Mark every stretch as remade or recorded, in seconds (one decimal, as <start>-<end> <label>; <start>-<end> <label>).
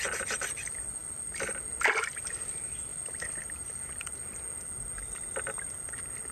0.0-6.3 recorded